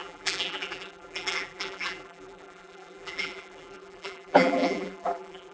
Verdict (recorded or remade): remade